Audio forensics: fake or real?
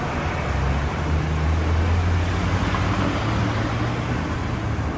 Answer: real